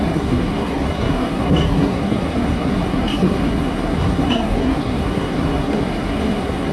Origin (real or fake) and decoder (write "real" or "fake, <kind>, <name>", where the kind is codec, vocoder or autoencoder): fake, codec, SNAC